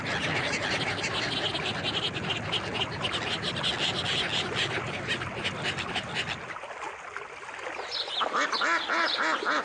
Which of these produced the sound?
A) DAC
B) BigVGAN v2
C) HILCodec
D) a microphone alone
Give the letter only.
D